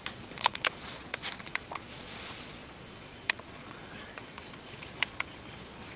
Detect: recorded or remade remade